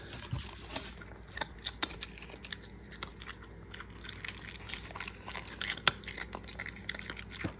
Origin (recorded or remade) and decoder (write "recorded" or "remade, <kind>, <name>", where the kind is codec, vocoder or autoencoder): recorded